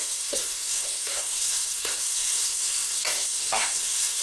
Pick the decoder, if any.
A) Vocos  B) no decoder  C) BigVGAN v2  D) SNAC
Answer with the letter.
D